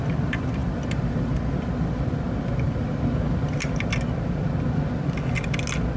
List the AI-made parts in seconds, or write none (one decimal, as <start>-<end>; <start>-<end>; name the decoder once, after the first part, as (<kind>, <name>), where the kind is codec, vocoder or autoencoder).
none